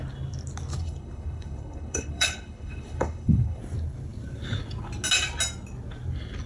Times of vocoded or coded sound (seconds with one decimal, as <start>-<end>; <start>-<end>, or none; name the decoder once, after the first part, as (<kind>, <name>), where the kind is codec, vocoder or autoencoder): 0.8-3.6 (codec, HILCodec)